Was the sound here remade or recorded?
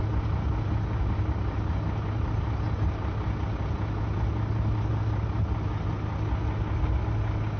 recorded